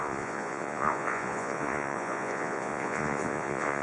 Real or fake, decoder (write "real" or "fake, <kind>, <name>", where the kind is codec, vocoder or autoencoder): fake, vocoder, Vocos